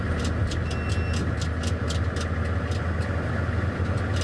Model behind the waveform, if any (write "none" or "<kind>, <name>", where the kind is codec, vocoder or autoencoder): none